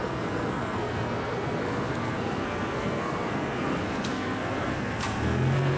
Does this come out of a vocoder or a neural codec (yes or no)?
yes